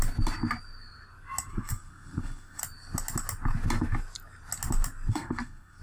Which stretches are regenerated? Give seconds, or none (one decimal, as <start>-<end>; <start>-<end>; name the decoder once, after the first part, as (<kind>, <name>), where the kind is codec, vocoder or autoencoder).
1.5-2.6 (codec, SNAC); 5.1-5.8